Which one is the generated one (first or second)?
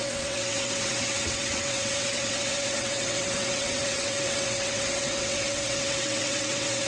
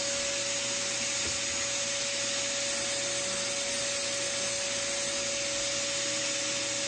first